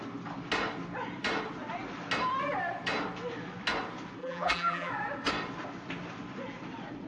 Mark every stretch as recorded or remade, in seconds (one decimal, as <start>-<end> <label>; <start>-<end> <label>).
0.0-4.2 recorded; 4.2-4.9 remade; 4.9-7.1 recorded